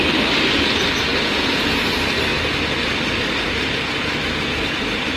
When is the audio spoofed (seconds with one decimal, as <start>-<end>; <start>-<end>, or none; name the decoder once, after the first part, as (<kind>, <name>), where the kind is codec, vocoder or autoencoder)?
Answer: 1.1-1.9 (vocoder, Vocos)